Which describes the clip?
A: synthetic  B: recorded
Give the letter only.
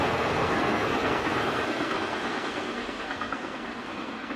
A